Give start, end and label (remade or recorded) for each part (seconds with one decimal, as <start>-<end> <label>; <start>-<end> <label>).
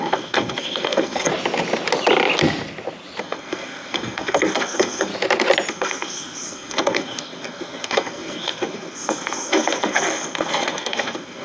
0.0-1.3 remade; 1.3-3.2 recorded; 3.2-5.1 remade; 5.1-5.7 recorded; 5.7-11.4 remade